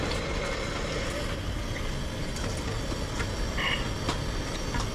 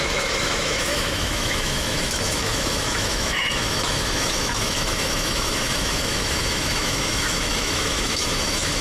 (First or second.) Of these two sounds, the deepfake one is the second